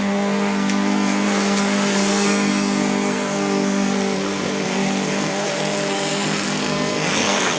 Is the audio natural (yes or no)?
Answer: no